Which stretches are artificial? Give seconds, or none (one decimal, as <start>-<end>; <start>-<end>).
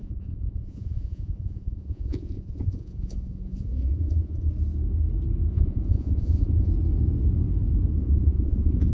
0.0-4.5; 5.5-6.7; 8.0-8.9